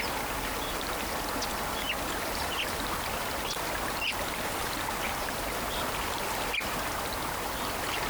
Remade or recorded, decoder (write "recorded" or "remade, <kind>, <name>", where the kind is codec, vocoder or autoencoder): recorded